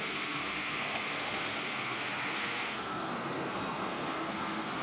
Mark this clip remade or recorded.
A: remade